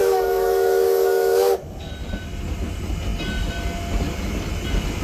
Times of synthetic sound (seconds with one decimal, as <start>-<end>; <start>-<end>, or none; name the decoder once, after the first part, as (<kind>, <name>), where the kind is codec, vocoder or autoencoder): 0.0-1.9 (codec, DAC)

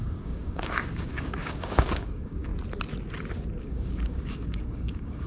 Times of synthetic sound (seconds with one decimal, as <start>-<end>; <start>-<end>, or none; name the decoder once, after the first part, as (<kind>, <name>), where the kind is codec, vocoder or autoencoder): 0.0-2.5 (codec, DAC); 3.6-5.3

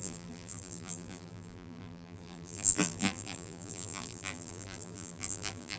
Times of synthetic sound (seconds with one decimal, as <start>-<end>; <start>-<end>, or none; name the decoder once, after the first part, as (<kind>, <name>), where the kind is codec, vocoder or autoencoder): 0.0-5.8 (vocoder, BigVGAN v2)

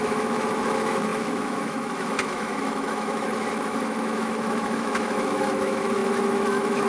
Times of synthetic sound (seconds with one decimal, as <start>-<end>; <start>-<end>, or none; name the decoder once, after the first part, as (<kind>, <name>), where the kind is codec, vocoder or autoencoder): 0.0-6.9 (autoencoder, DAC-VAE)

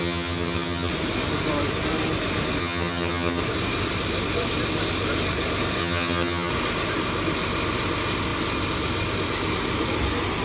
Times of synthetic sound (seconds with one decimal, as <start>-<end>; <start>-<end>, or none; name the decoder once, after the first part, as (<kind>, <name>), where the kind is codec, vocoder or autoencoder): 0.0-0.9 (vocoder, HiFi-GAN); 2.6-3.4; 5.8-6.5

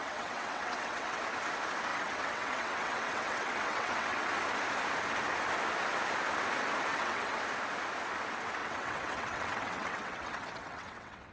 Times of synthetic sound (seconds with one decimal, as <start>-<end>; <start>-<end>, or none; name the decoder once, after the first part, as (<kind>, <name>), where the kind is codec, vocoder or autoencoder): 0.0-1.2 (vocoder, WaveNeXt); 1.9-4.3; 6.9-7.4; 8.6-11.3